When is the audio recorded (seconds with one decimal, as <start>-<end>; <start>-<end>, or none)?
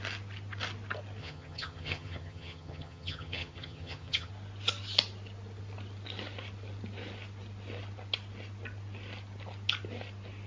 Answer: 0.0-1.2; 4.3-10.5